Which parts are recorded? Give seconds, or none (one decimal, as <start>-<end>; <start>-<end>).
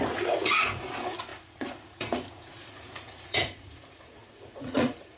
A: none